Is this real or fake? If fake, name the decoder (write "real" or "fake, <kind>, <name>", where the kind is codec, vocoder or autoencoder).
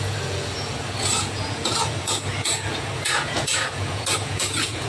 fake, vocoder, Vocos